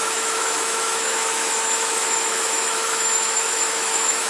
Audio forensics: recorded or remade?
remade